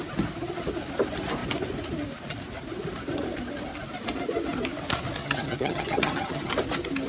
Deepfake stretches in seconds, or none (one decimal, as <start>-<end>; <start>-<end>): 5.2-6.5